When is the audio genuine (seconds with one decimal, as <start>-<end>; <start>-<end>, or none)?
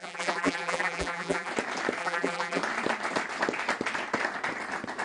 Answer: 1.5-2.0; 2.6-5.0